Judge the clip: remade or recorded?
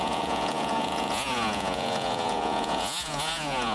remade